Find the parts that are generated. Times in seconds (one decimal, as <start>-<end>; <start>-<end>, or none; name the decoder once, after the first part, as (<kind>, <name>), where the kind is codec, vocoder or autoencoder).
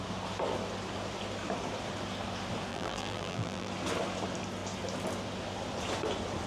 2.7-3.7 (vocoder, BigVGAN v2)